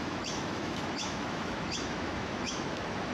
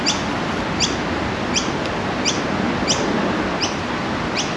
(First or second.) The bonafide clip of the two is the second